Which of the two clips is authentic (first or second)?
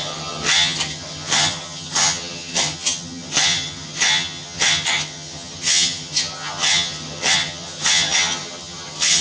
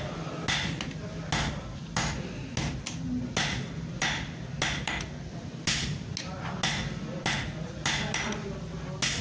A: second